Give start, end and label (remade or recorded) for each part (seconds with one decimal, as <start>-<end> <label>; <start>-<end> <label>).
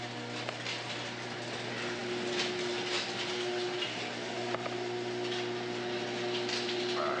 0.0-7.2 recorded